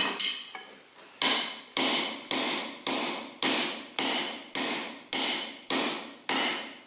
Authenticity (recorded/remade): recorded